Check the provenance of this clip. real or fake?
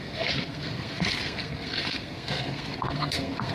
fake